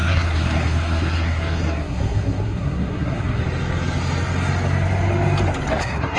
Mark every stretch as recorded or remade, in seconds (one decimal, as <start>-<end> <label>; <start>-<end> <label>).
0.0-3.4 remade; 3.4-5.8 recorded; 5.8-6.2 remade